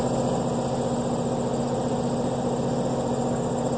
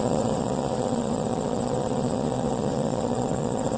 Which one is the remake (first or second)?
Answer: second